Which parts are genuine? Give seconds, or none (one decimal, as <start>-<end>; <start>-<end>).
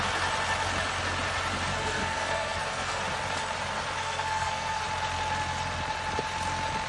0.0-1.7; 3.0-4.0; 4.8-6.9